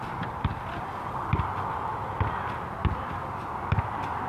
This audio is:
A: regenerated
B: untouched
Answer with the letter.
B